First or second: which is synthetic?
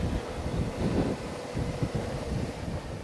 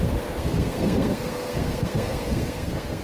second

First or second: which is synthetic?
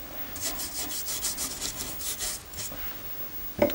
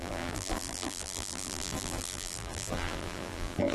second